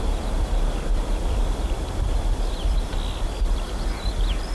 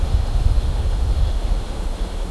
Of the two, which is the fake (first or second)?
second